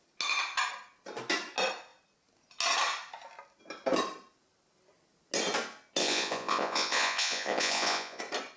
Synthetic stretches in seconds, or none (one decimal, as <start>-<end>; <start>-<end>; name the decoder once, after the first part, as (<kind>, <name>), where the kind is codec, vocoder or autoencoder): 6.0-8.2 (vocoder, Vocos)